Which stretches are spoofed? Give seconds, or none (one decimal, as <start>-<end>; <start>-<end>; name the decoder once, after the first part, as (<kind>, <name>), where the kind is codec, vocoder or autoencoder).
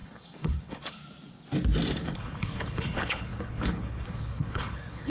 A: 0.0-1.0 (codec, HILCodec); 2.0-5.1